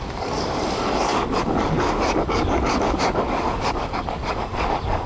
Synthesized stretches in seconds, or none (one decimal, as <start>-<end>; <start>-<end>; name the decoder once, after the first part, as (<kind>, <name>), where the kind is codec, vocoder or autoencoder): 0.0-5.1 (codec, DAC)